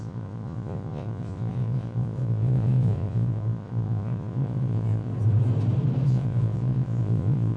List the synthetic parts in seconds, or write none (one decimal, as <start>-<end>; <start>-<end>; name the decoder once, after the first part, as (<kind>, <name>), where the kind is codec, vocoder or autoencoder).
0.0-5.1 (vocoder, Vocos); 6.1-7.6